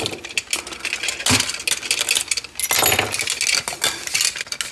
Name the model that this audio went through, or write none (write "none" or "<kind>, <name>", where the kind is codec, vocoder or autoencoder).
none